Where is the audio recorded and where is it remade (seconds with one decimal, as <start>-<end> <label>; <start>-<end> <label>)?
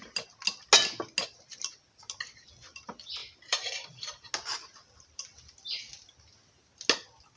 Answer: 0.0-3.2 recorded; 3.2-4.3 remade; 4.3-7.4 recorded